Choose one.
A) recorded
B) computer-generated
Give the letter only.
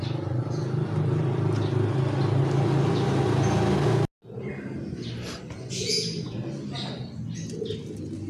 A